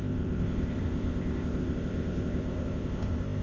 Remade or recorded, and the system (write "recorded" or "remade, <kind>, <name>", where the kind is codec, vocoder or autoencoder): remade, codec, ZipCodec